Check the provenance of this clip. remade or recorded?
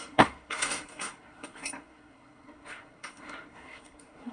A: remade